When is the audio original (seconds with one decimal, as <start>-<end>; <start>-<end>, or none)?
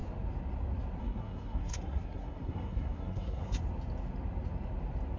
0.0-1.0; 3.6-5.2